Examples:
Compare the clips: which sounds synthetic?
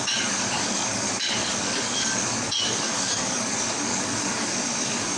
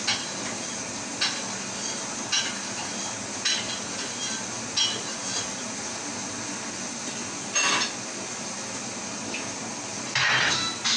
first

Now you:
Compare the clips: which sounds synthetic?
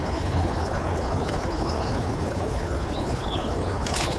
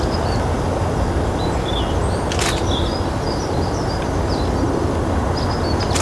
first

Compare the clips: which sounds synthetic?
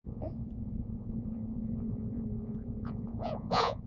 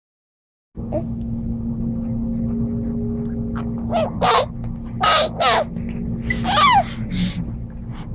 first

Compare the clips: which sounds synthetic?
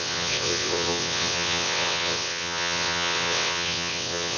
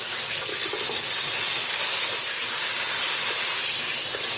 first